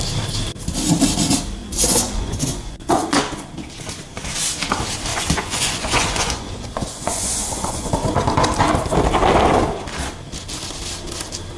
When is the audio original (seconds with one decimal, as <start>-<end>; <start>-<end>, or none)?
0.0-1.6; 3.2-5.1; 7.9-11.6